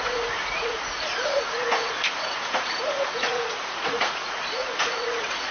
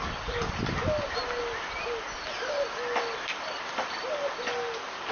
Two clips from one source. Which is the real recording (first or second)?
second